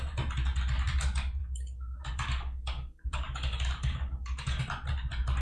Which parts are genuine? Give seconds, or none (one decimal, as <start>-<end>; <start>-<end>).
0.0-1.4; 4.6-5.4